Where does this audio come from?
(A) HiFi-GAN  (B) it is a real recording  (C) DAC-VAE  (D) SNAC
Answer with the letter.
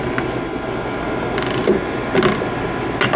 B